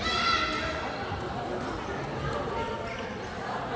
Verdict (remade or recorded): recorded